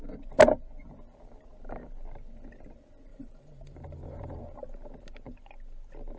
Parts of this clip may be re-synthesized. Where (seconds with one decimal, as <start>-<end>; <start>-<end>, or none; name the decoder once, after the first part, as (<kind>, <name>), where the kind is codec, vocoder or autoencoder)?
3.1-4.4 (vocoder, BigVGAN v2)